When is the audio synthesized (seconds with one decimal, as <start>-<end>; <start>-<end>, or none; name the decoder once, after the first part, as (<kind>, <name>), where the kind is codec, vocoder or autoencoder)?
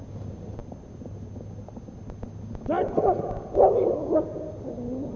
none